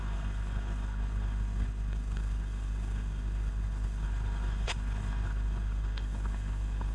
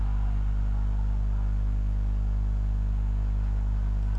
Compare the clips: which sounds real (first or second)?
second